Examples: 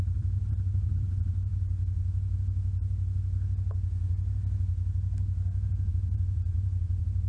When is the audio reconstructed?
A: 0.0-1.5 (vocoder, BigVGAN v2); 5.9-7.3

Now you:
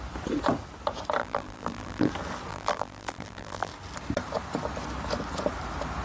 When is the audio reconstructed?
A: 1.2-2.1 (vocoder, BigVGAN v2); 2.5-3.7

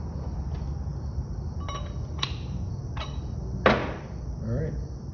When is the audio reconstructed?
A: 0.9-2.1 (vocoder, BigVGAN v2); 3.8-4.6

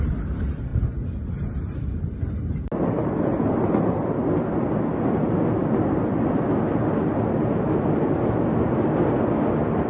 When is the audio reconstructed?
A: none

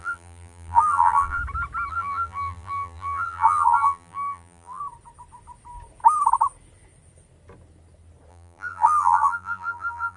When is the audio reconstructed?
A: 0.0-1.4 (vocoder, BigVGAN v2); 1.9-4.8; 8.3-10.2